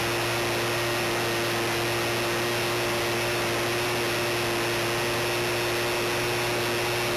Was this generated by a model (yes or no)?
no